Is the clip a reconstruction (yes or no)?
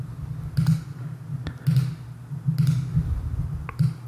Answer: no